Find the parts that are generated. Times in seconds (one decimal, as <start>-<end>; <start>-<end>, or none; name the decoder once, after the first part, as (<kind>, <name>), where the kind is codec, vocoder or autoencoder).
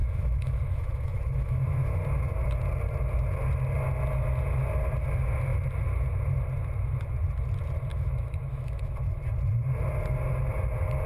0.0-2.0 (autoencoder, DAC-VAE); 7.9-9.2